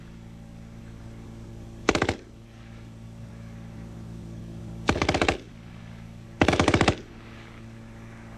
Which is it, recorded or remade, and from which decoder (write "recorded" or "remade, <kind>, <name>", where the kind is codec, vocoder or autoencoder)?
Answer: remade, codec, DAC